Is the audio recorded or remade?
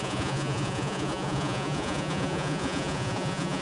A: remade